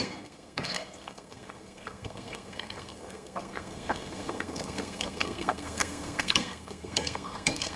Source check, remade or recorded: remade